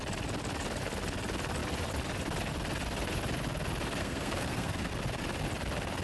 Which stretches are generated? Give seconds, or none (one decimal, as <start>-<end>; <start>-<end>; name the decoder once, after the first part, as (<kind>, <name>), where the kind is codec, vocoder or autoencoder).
4.0-4.9 (codec, SNAC)